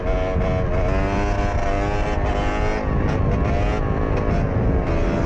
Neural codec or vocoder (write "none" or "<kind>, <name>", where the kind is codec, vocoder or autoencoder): none